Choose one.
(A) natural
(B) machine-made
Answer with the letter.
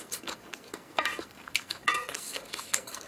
B